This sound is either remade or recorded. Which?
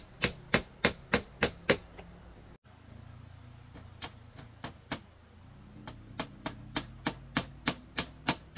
recorded